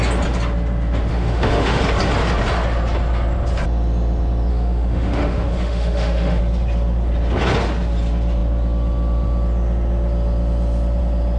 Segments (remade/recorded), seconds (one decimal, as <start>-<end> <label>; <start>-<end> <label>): 0.0-1.1 recorded; 1.1-1.8 remade; 1.8-4.5 recorded; 4.5-6.4 remade; 6.4-11.4 recorded